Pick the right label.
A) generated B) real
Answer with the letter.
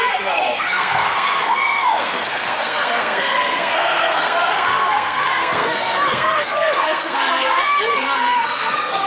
A